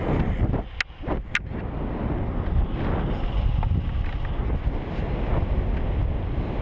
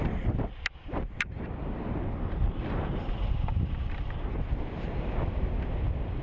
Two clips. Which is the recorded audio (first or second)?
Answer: first